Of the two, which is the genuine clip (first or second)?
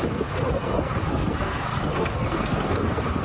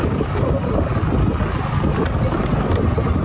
second